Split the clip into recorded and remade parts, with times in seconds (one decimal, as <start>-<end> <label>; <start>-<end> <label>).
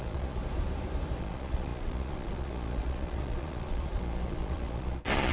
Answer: 0.0-0.4 remade; 0.4-1.2 recorded; 1.2-5.3 remade